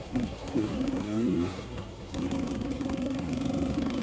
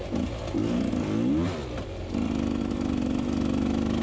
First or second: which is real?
second